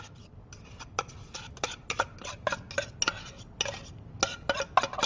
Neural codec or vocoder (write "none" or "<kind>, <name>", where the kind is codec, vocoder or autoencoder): none